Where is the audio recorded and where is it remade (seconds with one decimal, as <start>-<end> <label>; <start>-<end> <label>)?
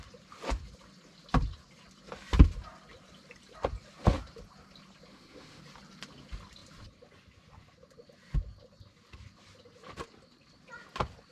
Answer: 0.0-5.1 recorded; 5.1-5.6 remade; 5.6-11.3 recorded